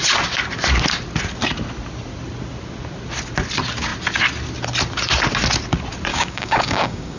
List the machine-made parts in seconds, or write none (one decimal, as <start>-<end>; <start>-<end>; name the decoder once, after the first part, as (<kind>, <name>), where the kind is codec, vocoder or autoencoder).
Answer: 6.1-7.2 (codec, DAC)